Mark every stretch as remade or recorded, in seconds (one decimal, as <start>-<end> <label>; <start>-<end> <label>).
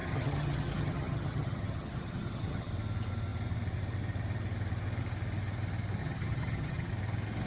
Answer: 0.0-2.7 remade; 2.7-6.0 recorded; 6.0-6.9 remade; 6.9-7.5 recorded